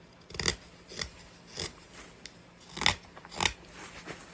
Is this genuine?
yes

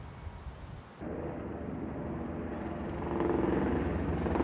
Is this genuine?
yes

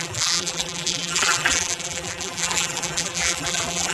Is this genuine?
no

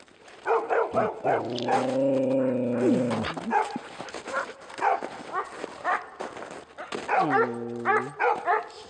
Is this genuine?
yes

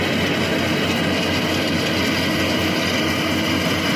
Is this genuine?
yes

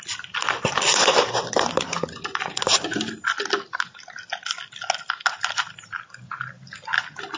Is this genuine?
yes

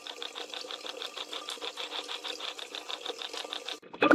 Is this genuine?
yes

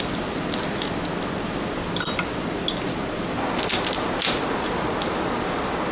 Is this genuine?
yes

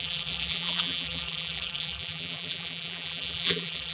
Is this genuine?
no